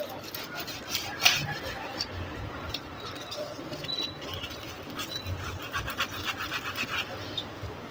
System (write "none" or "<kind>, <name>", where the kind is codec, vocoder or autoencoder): none